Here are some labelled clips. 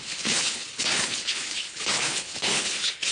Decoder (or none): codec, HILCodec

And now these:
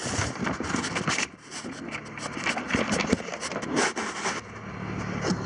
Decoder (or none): none